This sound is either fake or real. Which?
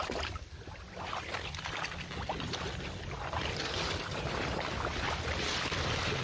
real